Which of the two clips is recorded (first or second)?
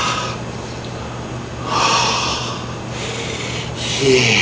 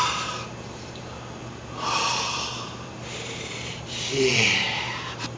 first